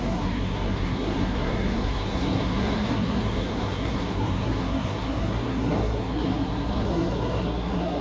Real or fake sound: fake